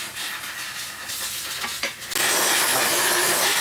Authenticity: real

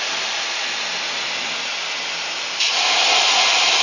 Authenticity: real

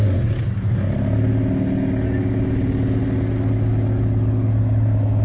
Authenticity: real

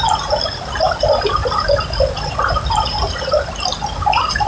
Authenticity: real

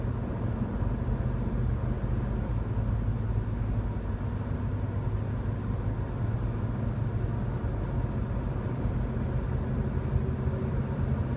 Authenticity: real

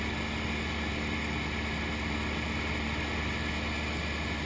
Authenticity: real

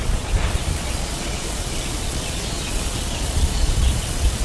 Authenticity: fake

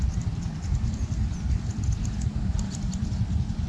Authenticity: real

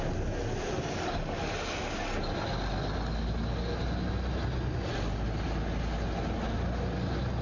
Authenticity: real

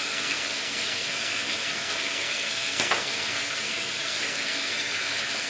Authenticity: fake